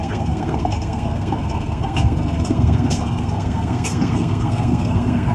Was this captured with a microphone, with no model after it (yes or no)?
no